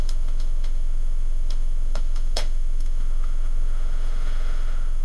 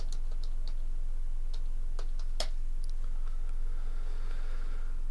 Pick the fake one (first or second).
first